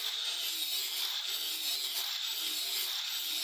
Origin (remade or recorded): recorded